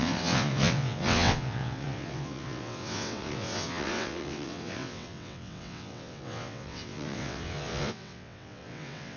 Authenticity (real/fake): fake